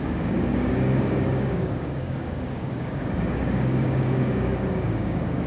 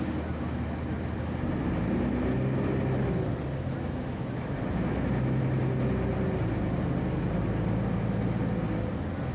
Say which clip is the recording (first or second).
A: second